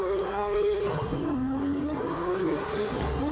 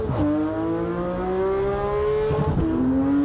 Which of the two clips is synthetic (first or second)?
first